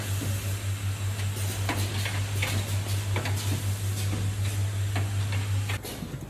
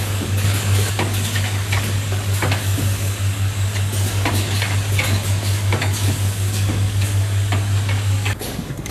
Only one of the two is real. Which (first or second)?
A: first